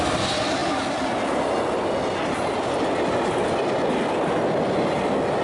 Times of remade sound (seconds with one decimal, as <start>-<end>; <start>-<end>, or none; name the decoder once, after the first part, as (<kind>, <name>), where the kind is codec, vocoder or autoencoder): none

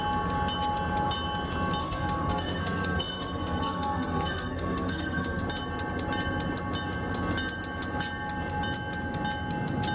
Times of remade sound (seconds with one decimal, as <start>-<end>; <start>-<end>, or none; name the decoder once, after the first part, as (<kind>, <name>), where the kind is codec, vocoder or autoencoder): 1.8-5.4 (codec, SNAC)

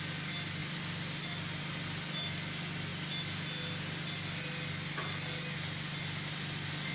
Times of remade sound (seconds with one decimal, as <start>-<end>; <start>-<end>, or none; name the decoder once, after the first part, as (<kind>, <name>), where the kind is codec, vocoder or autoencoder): none

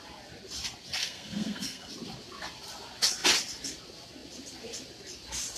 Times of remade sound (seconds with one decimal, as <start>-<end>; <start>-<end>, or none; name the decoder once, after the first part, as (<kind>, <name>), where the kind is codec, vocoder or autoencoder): 1.0-1.9 (codec, SNAC)

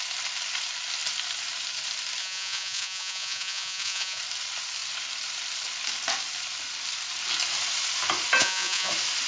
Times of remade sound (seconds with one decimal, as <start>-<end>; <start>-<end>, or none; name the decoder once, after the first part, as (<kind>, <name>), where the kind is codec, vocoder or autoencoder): 2.2-4.2 (vocoder, Vocos); 8.4-8.9

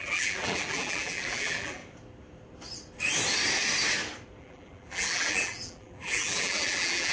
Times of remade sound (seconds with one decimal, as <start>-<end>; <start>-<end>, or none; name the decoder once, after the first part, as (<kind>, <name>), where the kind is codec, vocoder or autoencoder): 0.0-1.8 (vocoder, BigVGAN v2); 4.4-7.1

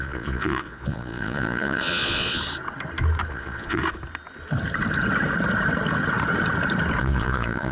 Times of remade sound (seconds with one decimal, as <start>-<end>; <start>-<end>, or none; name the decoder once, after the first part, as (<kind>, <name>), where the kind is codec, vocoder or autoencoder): 0.0-2.4 (vocoder, Vocos); 3.3-3.8; 7.0-7.7

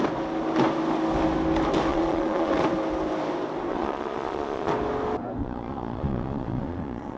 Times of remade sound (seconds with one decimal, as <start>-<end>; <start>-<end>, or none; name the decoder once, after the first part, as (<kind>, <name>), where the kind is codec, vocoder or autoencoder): 1.9-2.5 (vocoder, Vocos); 3.7-4.7; 5.4-7.2